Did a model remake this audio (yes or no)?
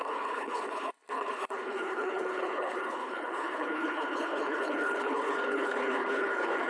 yes